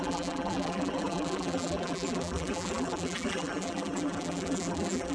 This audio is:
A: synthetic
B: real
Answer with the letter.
A